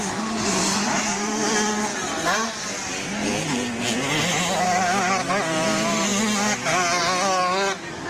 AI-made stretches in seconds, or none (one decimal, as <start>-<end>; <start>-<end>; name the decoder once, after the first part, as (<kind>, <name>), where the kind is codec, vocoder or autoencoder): 0.5-1.5 (vocoder, BigVGAN v2)